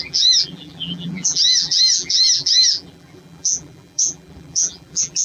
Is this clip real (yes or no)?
no